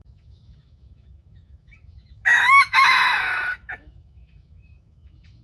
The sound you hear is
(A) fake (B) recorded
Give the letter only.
A